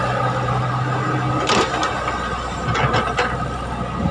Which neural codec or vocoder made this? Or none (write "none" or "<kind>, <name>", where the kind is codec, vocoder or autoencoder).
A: none